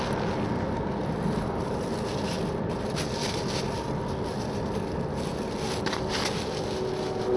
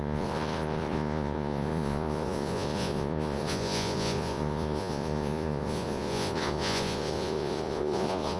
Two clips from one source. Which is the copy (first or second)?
second